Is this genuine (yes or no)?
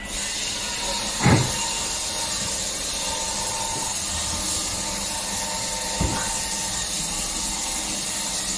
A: yes